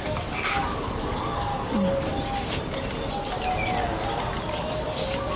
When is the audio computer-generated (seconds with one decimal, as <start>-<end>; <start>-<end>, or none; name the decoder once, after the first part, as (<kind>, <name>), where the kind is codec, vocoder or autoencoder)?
0.0-1.5 (codec, DAC); 4.7-5.4